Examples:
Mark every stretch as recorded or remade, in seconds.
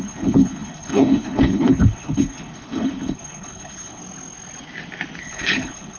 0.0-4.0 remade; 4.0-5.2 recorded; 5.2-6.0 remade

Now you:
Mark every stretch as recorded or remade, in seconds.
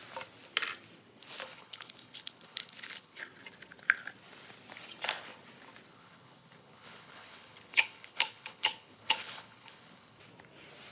0.0-1.4 recorded; 1.4-3.2 remade; 3.2-5.9 recorded; 5.9-10.2 remade; 10.2-10.9 recorded